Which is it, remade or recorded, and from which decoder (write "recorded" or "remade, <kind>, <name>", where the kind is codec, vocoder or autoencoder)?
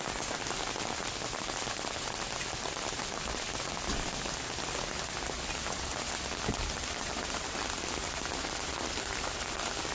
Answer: recorded